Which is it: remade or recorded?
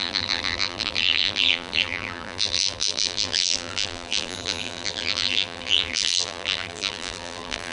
remade